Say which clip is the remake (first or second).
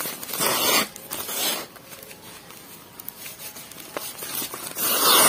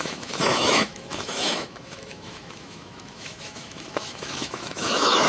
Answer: second